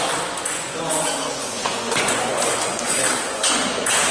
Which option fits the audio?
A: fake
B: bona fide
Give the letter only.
A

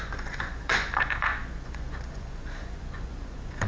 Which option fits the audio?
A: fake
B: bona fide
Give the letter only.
A